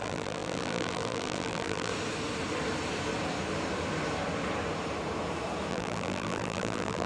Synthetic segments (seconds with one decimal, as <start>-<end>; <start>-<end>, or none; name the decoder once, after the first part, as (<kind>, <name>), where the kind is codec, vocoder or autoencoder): 0.0-1.9 (vocoder, BigVGAN v2); 5.7-7.1